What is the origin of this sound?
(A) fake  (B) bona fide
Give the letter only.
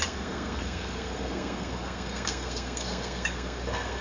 A